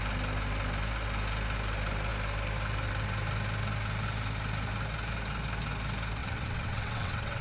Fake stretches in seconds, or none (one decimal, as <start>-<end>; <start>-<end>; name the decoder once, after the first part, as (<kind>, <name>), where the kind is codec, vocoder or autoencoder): 6.2-7.4 (vocoder, WaveNeXt)